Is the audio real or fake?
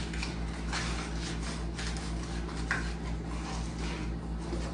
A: real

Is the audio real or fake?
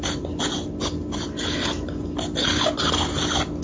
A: real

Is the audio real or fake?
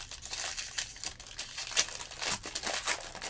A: real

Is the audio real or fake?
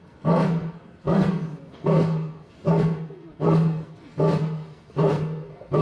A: fake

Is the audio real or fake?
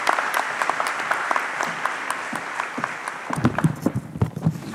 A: fake